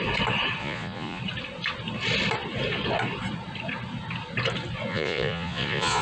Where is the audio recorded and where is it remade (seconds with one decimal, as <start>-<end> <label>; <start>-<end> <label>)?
0.0-0.6 recorded; 0.6-1.2 remade; 1.2-4.9 recorded; 4.9-6.0 remade